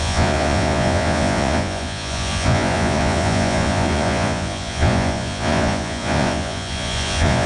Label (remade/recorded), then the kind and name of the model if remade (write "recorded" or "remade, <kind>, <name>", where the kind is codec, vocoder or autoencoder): remade, vocoder, Vocos